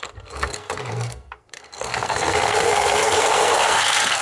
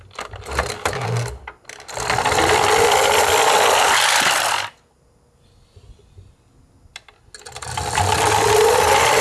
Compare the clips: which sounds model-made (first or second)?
first